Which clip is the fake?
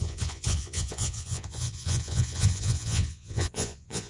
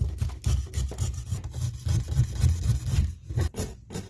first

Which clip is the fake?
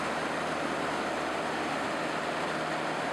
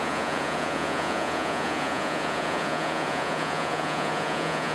second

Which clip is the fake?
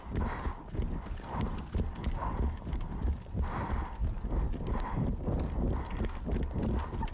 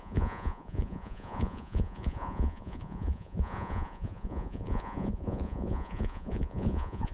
second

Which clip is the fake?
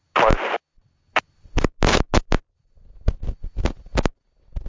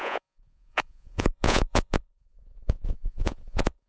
second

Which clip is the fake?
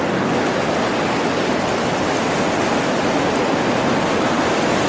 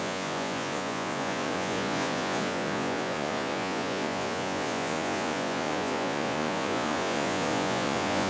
second